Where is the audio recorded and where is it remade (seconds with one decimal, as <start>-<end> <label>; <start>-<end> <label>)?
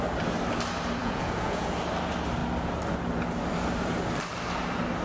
0.0-1.0 recorded; 1.0-1.7 remade; 1.7-5.0 recorded